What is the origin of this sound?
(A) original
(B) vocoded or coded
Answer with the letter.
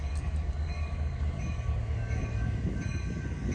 B